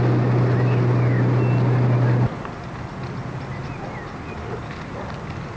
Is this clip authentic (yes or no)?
yes